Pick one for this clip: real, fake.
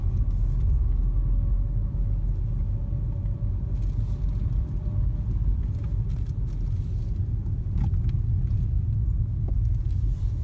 real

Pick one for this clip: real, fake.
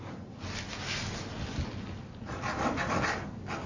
real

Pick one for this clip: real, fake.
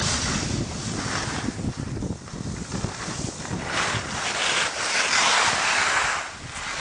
real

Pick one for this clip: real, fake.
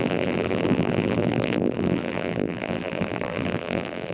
fake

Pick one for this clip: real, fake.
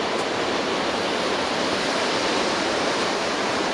fake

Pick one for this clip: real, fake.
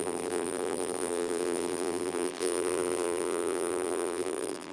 fake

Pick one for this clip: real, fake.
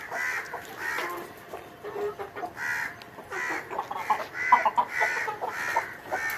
real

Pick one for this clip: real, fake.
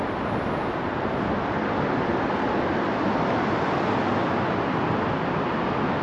real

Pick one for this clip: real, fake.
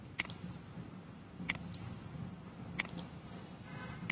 fake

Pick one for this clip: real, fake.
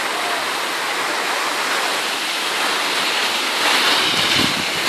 real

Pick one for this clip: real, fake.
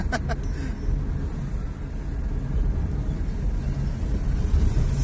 real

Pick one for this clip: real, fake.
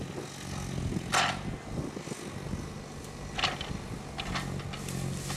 real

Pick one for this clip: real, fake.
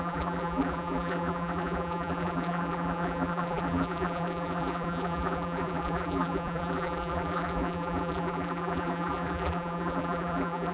fake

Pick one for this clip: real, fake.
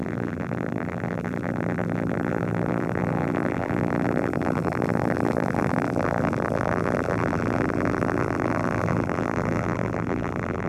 fake